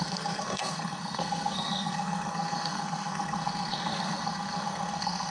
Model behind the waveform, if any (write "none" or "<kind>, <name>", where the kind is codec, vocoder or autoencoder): codec, SNAC